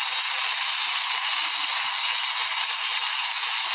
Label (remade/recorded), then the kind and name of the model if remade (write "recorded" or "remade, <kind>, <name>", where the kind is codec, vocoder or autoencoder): recorded